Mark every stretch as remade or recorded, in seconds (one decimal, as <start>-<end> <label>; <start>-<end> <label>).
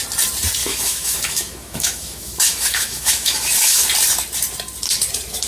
0.0-0.6 recorded; 0.6-3.9 remade; 3.9-5.5 recorded